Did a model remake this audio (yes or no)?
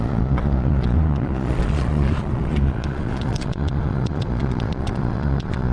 yes